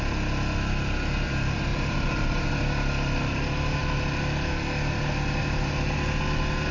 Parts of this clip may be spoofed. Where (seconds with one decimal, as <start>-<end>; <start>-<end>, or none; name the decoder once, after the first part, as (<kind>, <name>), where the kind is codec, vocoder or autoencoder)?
1.7-2.4 (vocoder, BigVGAN v2)